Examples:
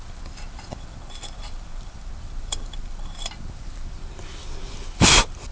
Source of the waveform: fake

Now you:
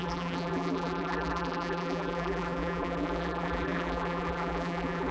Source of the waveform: fake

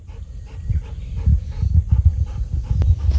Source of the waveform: real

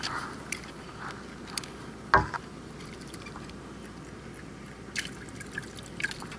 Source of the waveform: real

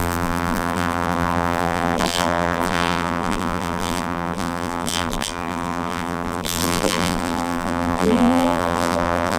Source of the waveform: fake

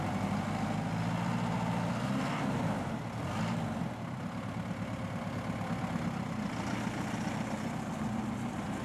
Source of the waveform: real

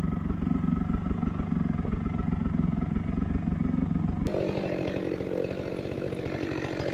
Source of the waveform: real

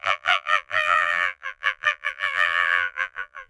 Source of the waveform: fake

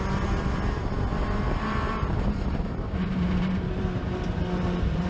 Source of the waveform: fake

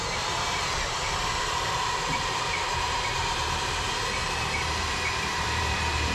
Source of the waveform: fake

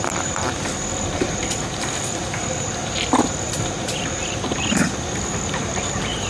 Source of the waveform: fake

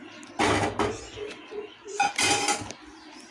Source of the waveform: real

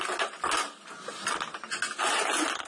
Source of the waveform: real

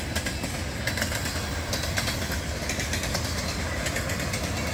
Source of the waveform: real